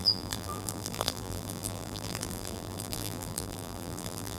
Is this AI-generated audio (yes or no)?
yes